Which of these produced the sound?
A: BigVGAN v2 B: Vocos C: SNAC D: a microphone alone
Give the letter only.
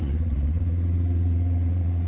B